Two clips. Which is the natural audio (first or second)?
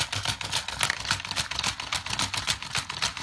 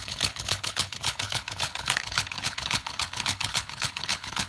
first